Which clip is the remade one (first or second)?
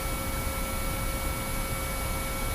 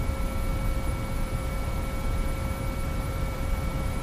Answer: second